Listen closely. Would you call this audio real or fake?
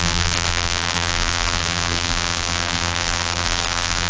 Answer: fake